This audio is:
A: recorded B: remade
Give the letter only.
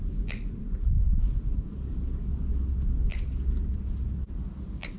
A